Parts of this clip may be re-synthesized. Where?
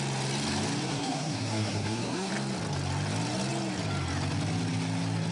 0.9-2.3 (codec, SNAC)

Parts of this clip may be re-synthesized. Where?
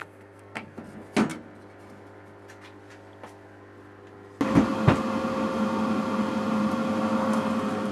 0.0-0.8 (codec, SNAC)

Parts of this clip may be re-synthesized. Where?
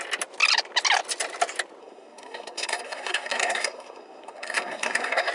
1.8-5.3 (codec, SNAC)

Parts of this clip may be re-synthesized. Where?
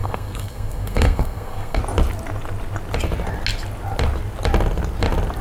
0.0-1.8 (codec, SNAC)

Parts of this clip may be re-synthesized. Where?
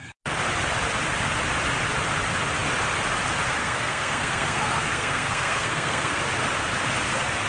3.6-6.2 (codec, SNAC)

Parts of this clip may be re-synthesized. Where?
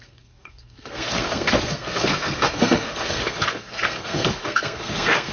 0.0-5.3 (codec, SNAC)